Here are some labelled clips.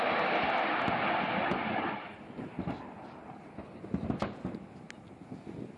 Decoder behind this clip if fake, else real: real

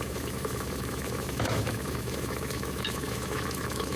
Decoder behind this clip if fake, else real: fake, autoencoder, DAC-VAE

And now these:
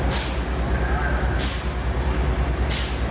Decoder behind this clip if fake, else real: real